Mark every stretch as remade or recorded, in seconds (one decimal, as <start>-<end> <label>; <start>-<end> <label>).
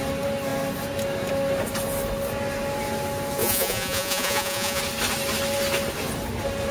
0.0-3.4 recorded; 3.4-4.8 remade; 4.8-6.7 recorded